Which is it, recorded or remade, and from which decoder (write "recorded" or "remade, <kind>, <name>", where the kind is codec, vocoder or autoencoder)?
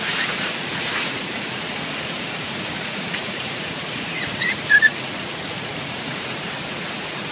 remade, vocoder, Vocos